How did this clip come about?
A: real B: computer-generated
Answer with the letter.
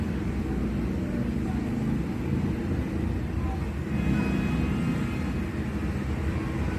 A